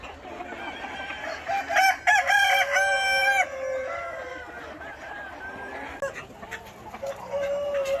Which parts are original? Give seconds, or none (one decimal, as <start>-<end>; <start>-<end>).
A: 0.0-8.0